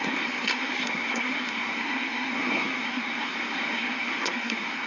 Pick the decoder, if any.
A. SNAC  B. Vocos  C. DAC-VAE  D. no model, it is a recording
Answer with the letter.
A